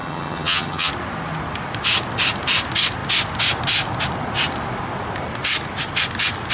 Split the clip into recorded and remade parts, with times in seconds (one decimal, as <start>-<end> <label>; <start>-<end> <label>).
0.0-0.9 remade; 0.9-6.5 recorded